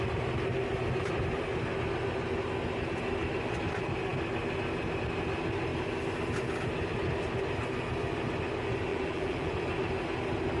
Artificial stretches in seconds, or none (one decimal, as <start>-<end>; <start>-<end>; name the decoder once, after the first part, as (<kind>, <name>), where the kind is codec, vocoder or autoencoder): 8.9-9.5 (vocoder, BigVGAN v2)